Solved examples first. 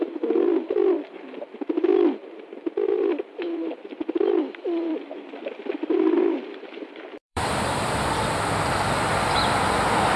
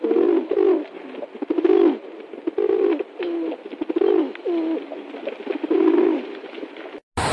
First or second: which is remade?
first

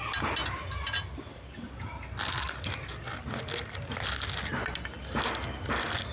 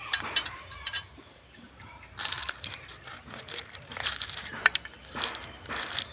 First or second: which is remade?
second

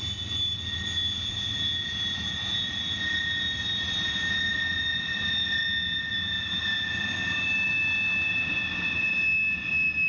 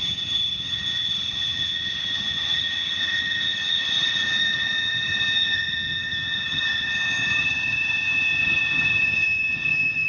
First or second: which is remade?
second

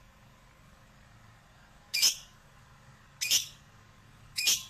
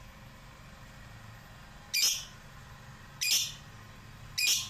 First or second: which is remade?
first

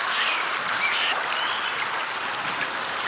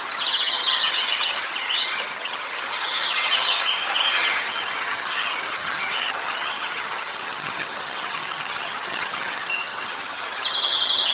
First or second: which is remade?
second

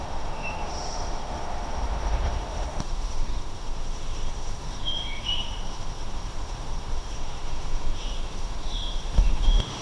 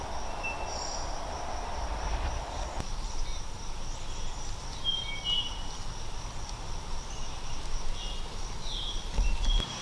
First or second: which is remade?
first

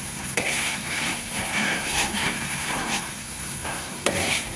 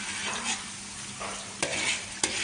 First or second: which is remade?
first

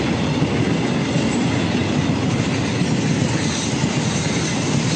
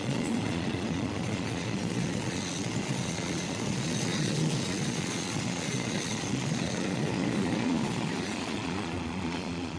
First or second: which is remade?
second